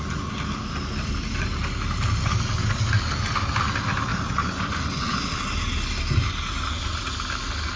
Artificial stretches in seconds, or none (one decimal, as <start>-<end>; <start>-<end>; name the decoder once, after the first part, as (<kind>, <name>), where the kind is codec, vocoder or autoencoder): none